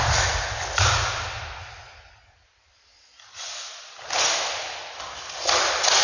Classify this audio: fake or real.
real